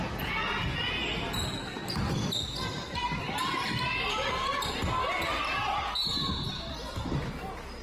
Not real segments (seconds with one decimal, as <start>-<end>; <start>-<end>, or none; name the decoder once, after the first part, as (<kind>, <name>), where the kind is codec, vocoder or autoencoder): none